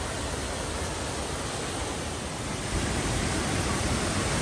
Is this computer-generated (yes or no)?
yes